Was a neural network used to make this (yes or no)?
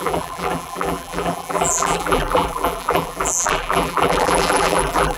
yes